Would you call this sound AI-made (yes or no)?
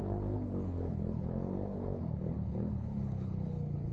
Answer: yes